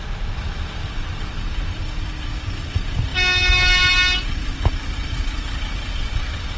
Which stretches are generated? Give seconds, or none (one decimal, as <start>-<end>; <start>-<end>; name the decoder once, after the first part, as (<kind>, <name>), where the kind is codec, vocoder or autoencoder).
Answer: none